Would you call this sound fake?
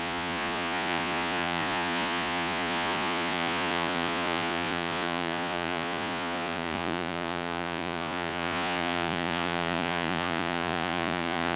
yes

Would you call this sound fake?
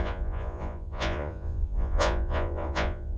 yes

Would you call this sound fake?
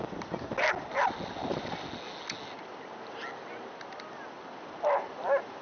no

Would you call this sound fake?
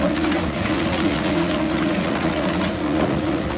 yes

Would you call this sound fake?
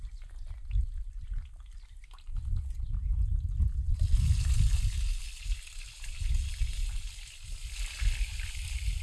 no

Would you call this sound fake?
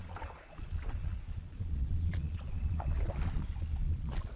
yes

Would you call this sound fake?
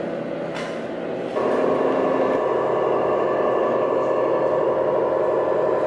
no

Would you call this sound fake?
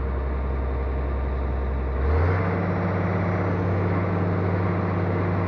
no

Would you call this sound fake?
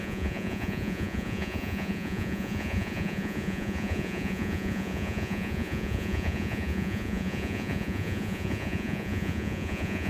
yes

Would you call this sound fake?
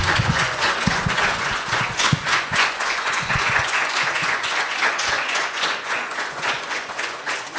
yes